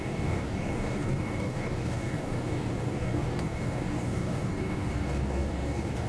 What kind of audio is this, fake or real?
fake